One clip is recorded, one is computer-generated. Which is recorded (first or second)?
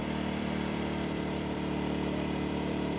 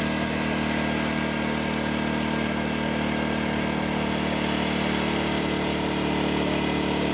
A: second